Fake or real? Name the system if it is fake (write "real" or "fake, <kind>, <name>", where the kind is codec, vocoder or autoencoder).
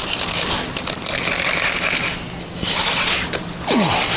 real